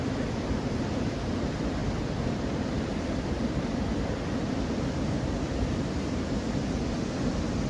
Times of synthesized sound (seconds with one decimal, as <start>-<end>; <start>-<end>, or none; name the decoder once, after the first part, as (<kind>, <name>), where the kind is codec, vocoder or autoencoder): 0.0-1.8 (vocoder, BigVGAN v2); 2.5-7.7